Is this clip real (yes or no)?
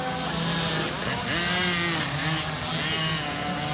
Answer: yes